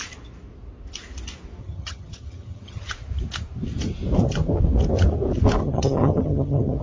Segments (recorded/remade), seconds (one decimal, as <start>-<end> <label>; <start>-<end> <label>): 0.0-1.6 recorded; 1.6-2.9 remade; 2.9-5.6 recorded; 5.6-6.8 remade